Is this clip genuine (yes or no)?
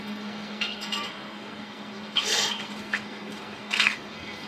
no